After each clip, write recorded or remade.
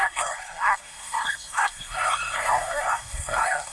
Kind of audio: remade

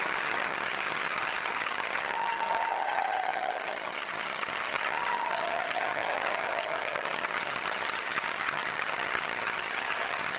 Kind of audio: remade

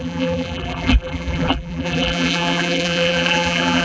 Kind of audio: remade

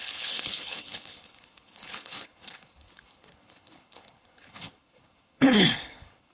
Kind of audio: remade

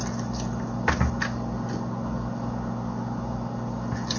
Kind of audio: recorded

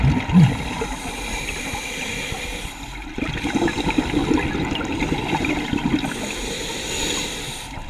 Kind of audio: recorded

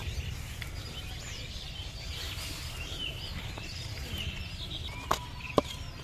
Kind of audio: recorded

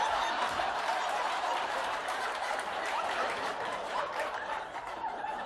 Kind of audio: remade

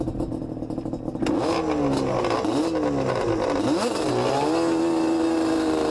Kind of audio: recorded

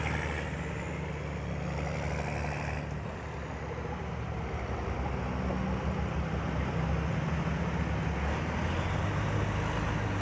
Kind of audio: recorded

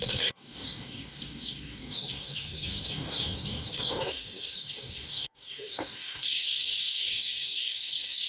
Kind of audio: remade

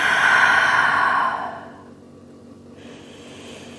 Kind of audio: recorded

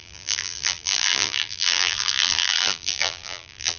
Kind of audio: remade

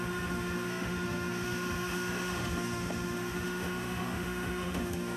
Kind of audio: remade